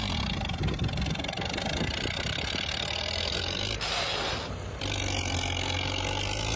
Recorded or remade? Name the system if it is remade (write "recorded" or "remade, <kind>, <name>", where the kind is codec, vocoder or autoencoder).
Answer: recorded